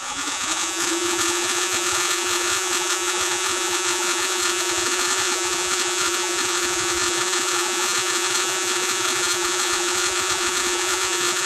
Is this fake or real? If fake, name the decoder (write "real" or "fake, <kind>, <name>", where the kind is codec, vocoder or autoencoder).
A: fake, vocoder, Vocos